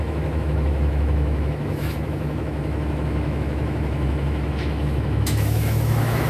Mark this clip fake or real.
fake